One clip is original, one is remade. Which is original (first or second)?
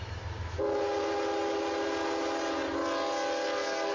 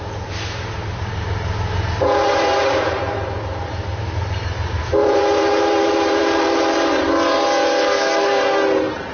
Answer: first